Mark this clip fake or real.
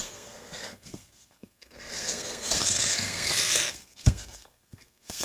fake